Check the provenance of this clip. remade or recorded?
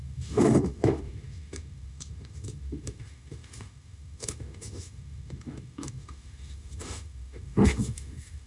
remade